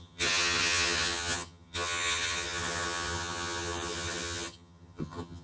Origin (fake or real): fake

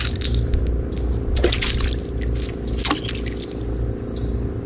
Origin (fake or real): real